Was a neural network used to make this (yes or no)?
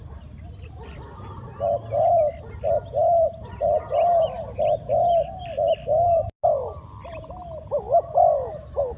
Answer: no